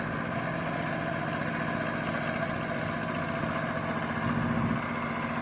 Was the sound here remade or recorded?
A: recorded